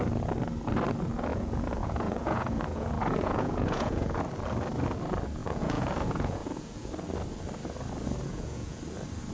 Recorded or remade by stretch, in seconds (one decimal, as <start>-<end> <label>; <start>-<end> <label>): 0.0-1.3 recorded; 1.3-4.2 remade; 4.2-5.4 recorded; 5.4-6.9 remade; 6.9-8.3 recorded; 8.3-8.8 remade; 8.8-9.3 recorded